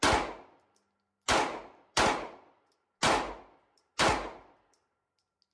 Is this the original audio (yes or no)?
yes